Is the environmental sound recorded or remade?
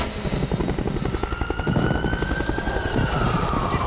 recorded